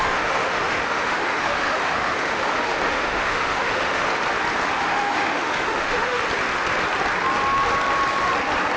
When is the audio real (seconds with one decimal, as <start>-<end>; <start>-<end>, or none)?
4.1-4.7; 6.2-8.8